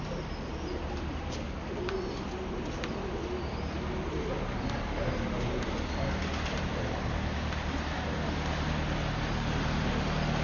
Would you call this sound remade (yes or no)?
no